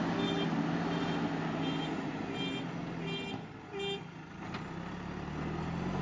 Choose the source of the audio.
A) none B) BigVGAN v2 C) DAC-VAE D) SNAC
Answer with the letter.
A